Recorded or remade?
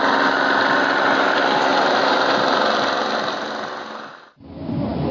recorded